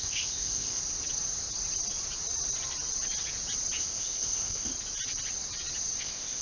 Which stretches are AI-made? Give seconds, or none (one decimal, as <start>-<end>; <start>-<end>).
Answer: 0.0-0.8; 3.8-4.7; 6.0-6.4